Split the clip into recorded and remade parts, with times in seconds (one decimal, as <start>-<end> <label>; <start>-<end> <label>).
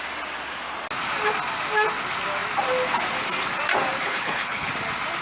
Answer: 0.0-4.0 recorded; 4.0-4.7 remade; 4.7-5.2 recorded